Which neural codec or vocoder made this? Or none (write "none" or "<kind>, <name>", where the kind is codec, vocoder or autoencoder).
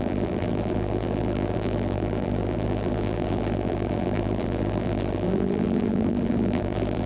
vocoder, BigVGAN v2